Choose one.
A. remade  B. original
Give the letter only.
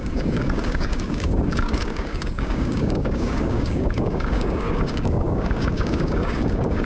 A